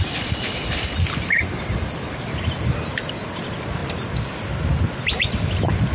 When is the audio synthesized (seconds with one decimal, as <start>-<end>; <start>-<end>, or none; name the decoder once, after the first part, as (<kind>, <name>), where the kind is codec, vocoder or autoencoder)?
none